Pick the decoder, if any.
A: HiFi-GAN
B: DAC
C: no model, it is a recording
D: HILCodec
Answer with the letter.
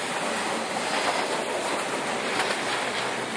C